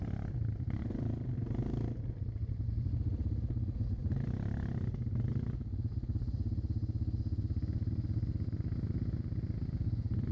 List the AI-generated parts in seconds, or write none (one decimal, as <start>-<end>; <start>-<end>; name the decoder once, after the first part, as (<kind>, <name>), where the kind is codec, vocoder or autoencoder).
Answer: none

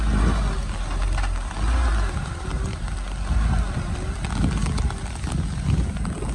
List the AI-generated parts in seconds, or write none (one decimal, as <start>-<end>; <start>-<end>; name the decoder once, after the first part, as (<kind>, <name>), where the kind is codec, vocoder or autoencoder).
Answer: none

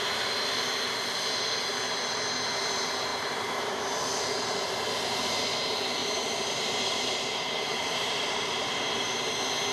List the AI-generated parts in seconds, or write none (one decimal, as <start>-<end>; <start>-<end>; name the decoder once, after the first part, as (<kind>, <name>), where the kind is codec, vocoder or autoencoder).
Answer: 3.1-3.8 (vocoder, BigVGAN v2); 6.0-9.2

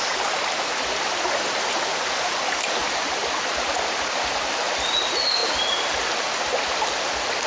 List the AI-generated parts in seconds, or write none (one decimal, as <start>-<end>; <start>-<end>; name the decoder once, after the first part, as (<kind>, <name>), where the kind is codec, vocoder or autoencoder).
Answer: none

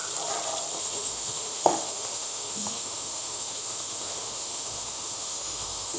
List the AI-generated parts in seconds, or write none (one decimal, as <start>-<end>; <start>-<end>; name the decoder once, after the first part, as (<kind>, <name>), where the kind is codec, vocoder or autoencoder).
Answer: 0.8-6.0 (autoencoder, DAC-VAE)

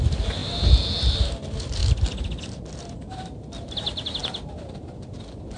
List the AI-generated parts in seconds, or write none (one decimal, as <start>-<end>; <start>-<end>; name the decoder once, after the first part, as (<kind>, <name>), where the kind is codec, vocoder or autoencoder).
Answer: 0.0-0.4 (vocoder, BigVGAN v2); 1.0-1.8; 2.4-5.6